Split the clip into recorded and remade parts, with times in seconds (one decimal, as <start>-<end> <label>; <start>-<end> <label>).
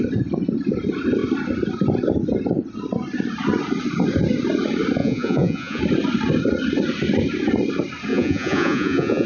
0.0-5.0 recorded; 5.0-5.8 remade; 5.8-8.1 recorded; 8.1-9.3 remade